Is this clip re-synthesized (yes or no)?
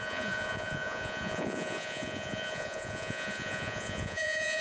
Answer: yes